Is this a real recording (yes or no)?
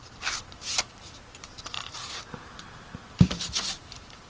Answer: no